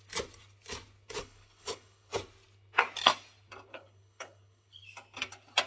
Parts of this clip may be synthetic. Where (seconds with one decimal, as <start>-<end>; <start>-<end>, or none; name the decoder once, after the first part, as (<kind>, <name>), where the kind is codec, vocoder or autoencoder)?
1.2-2.1 (codec, HILCodec); 3.7-4.8